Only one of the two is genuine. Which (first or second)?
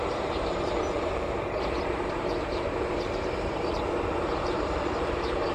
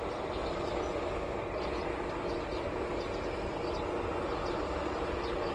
second